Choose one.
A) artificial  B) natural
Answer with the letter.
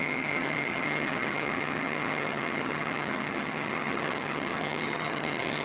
A